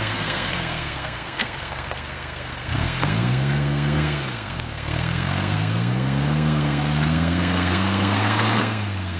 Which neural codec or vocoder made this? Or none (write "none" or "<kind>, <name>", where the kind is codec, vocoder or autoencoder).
codec, SNAC